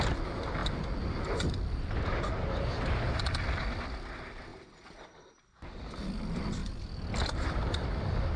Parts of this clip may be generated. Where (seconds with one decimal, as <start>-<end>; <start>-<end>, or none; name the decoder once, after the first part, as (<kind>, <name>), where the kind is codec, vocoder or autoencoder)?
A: 4.5-5.9 (vocoder, BigVGAN v2); 6.6-8.4